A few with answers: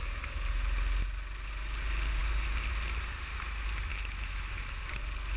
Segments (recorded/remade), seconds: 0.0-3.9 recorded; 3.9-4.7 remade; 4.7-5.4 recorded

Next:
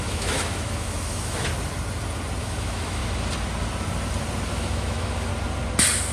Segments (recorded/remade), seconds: 0.0-1.5 remade; 1.5-2.4 recorded; 2.4-3.0 remade; 3.0-4.5 recorded; 4.5-5.3 remade; 5.3-6.1 recorded